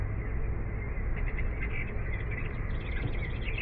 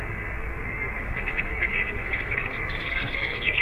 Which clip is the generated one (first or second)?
second